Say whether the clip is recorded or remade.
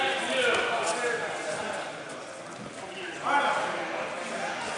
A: recorded